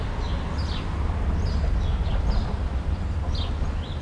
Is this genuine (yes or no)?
yes